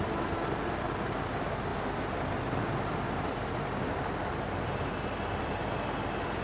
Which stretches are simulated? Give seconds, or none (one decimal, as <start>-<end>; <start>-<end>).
none